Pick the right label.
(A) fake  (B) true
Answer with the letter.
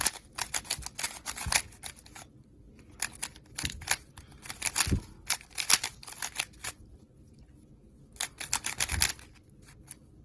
B